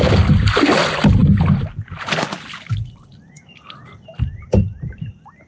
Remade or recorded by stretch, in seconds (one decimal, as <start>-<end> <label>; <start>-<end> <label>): 0.0-5.5 recorded